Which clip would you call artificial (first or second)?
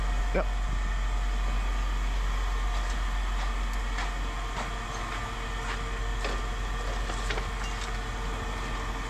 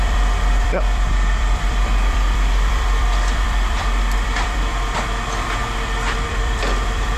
second